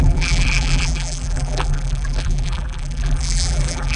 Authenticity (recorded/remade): remade